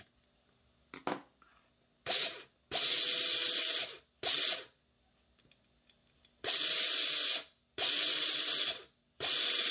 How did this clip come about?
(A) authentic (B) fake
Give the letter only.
A